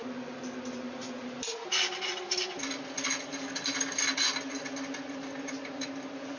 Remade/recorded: recorded